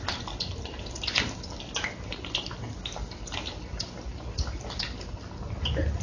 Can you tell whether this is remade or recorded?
recorded